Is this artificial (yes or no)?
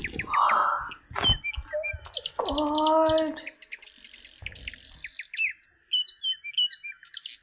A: no